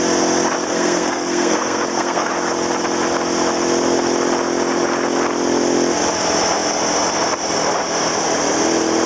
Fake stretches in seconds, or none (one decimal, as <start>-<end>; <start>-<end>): 0.6-2.3